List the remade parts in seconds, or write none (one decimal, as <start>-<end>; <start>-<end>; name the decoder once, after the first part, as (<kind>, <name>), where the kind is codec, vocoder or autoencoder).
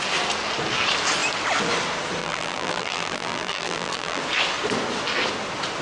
2.2-4.2 (vocoder, BigVGAN v2)